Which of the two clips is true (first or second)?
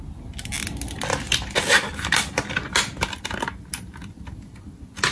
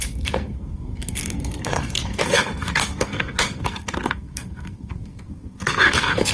first